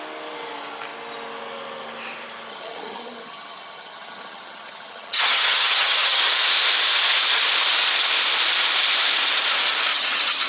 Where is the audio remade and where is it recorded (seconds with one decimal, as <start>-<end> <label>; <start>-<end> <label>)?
0.0-2.5 recorded; 2.5-6.2 remade; 6.2-9.9 recorded; 9.9-10.5 remade